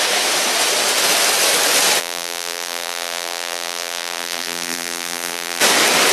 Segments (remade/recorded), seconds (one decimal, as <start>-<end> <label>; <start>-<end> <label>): 0.0-2.0 recorded; 2.0-5.6 remade; 5.6-6.1 recorded